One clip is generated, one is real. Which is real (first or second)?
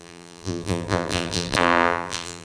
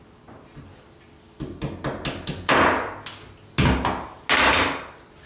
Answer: second